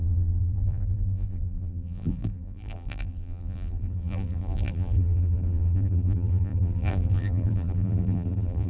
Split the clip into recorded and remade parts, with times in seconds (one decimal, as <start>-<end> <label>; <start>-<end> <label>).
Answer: 0.0-8.7 remade